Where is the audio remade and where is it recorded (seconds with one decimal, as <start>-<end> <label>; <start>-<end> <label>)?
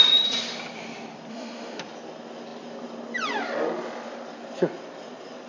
0.0-1.3 recorded; 1.3-1.8 remade; 1.8-5.5 recorded